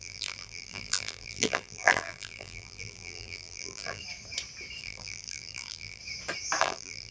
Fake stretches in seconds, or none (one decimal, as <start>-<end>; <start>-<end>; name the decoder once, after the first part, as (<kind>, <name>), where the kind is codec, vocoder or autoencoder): 0.0-4.0 (vocoder, BigVGAN v2); 4.8-6.0; 6.6-7.1